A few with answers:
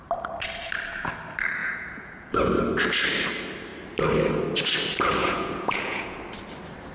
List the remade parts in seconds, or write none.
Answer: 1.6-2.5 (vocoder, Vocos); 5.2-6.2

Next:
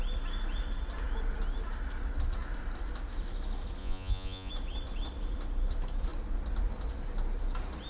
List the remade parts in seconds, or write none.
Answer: 3.8-4.5 (vocoder, Vocos)